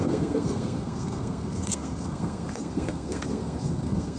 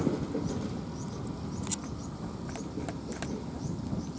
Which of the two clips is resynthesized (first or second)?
first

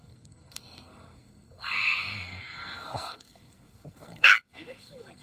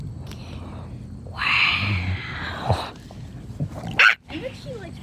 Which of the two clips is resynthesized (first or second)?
first